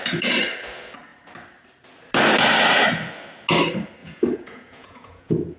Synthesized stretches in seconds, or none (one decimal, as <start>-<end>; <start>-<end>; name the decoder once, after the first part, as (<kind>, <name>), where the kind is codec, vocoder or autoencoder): 4.0-5.6 (vocoder, Vocos)

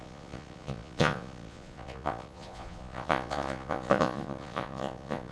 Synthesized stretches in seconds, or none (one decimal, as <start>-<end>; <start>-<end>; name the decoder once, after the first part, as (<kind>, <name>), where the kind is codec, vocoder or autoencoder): 0.0-5.3 (vocoder, Vocos)

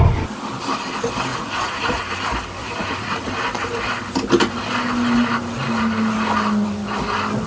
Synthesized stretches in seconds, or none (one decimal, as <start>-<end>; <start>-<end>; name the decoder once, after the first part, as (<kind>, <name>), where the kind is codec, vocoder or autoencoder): 1.3-2.0 (vocoder, Vocos); 2.6-3.3

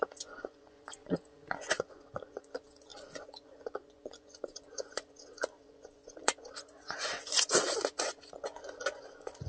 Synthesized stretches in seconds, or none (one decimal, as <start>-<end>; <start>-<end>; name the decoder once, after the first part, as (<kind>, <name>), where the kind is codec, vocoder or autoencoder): 0.0-9.5 (vocoder, Vocos)

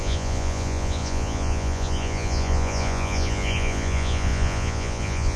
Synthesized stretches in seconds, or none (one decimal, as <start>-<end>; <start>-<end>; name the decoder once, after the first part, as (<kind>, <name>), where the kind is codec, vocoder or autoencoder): 0.0-5.4 (vocoder, Vocos)

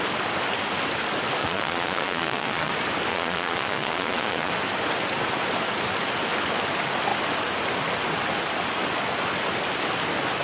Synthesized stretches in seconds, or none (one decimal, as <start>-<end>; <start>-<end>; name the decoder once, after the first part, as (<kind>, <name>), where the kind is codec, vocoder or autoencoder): 1.4-2.7 (vocoder, Vocos); 3.1-4.5